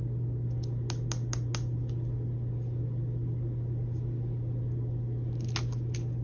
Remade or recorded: recorded